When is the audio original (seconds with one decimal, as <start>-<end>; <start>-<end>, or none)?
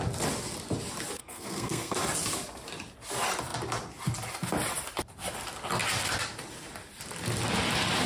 0.0-1.2; 2.0-8.1